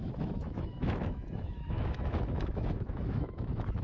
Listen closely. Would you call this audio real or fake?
fake